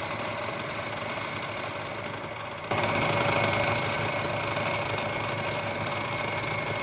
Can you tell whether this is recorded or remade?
recorded